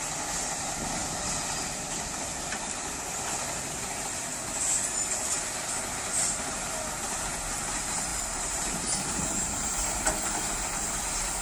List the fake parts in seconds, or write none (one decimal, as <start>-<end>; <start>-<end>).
8.1-10.0